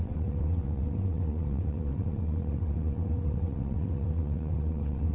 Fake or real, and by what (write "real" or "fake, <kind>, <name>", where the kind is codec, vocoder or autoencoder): fake, vocoder, WaveNeXt